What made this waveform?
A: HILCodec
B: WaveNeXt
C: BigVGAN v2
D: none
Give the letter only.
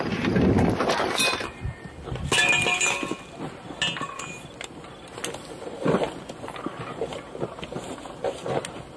D